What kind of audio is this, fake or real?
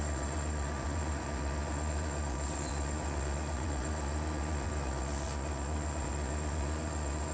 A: fake